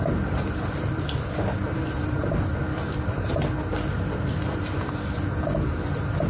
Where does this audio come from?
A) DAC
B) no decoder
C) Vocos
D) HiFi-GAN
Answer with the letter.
B